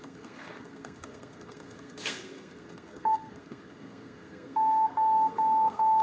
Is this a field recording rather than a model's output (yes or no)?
no